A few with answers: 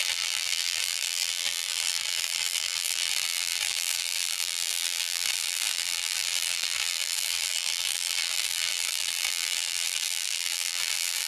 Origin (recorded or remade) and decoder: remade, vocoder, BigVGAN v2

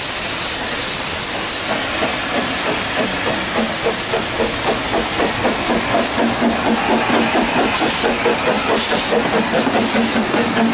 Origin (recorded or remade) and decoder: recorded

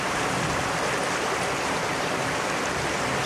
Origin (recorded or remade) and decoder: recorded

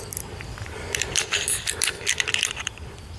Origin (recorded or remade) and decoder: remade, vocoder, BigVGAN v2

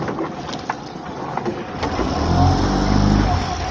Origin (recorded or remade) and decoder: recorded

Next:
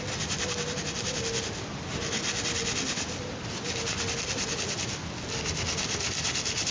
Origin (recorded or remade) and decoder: recorded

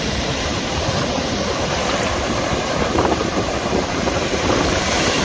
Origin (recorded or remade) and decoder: remade, vocoder, BigVGAN v2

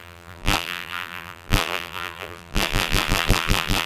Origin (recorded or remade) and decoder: remade, vocoder, BigVGAN v2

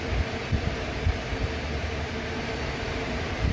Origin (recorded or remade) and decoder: remade, vocoder, BigVGAN v2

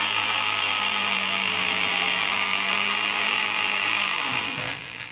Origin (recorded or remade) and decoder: remade, vocoder, BigVGAN v2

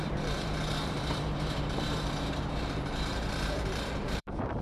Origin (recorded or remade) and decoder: remade, vocoder, BigVGAN v2